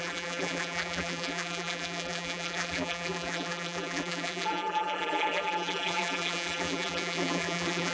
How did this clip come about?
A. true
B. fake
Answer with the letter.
B